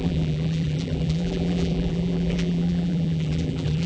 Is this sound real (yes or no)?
no